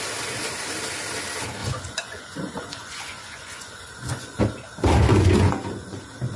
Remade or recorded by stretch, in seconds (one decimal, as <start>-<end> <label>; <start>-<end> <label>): 0.0-1.6 recorded; 1.6-4.4 remade; 4.4-5.1 recorded; 5.1-6.0 remade; 6.0-6.4 recorded